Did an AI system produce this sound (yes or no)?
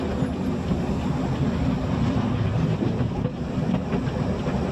no